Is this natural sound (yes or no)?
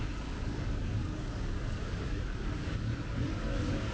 no